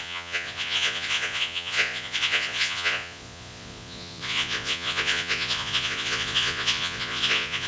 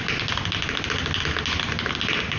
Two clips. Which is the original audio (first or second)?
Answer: second